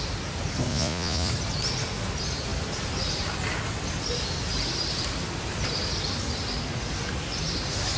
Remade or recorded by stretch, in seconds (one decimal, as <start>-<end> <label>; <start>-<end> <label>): 0.0-0.7 recorded; 0.7-1.3 remade; 1.3-8.0 recorded